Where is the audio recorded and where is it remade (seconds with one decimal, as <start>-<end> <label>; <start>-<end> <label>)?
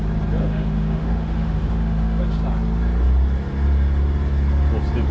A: 0.0-0.4 recorded; 0.4-2.2 remade; 2.2-5.1 recorded